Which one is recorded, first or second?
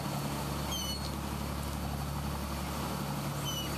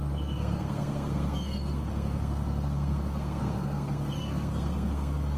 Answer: first